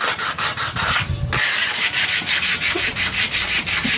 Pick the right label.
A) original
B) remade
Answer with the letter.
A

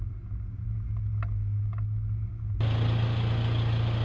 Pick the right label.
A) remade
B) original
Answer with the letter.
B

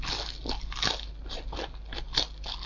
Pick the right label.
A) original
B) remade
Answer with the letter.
A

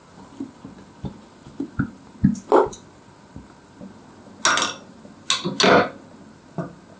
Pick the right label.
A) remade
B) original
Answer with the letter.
B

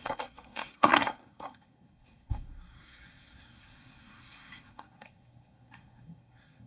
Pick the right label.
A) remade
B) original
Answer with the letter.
A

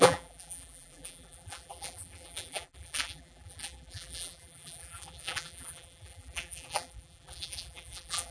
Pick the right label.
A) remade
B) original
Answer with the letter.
A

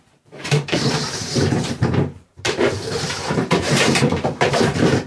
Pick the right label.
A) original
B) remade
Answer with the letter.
B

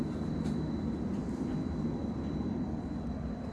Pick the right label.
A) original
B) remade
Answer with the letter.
A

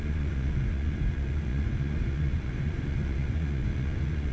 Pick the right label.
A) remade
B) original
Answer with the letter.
A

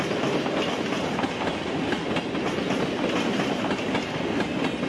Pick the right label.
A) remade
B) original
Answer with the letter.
B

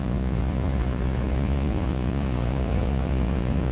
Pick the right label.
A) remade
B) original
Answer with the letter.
A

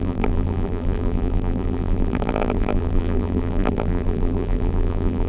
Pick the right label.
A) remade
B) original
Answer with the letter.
A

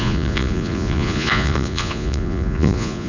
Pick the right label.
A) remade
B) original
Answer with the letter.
A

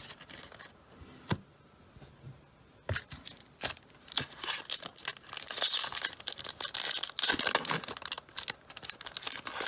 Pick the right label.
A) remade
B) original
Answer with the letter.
B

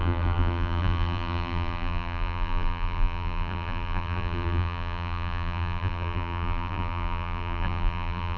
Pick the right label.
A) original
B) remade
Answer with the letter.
B